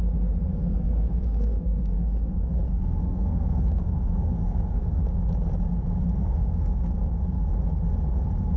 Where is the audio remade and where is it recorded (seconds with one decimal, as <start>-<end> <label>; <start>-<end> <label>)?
0.0-0.5 recorded; 0.5-5.0 remade; 5.0-6.2 recorded; 6.2-7.2 remade; 7.2-8.6 recorded